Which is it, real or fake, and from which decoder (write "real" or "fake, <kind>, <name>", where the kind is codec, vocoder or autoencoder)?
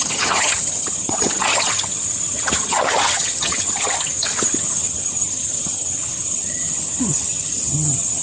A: fake, vocoder, HiFi-GAN